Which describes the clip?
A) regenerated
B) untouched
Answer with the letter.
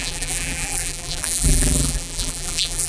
A